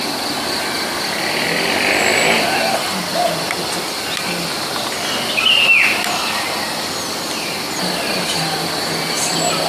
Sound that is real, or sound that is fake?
real